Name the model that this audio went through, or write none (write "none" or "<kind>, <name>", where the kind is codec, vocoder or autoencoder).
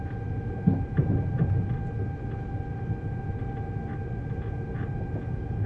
none